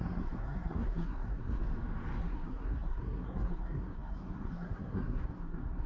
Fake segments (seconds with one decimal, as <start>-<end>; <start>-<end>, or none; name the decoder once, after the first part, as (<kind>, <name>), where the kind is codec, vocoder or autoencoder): 0.0-1.6 (codec, SNAC); 2.2-5.9